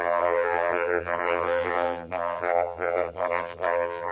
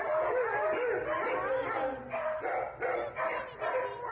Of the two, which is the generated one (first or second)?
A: first